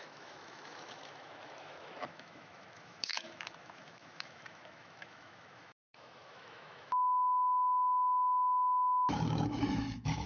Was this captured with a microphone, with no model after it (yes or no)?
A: no